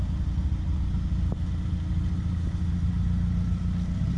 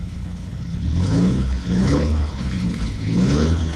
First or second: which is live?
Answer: first